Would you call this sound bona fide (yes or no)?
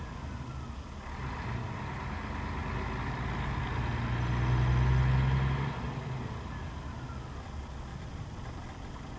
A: yes